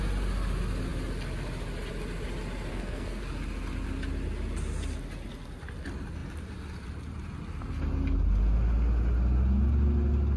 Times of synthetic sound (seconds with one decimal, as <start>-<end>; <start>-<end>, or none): 2.7-3.2